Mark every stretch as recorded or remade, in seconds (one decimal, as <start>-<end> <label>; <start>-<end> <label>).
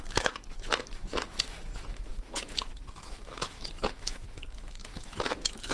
0.0-5.7 remade